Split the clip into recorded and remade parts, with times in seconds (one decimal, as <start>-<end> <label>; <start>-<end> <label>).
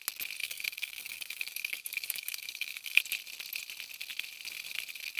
0.0-0.4 recorded; 0.4-3.0 remade; 3.0-5.2 recorded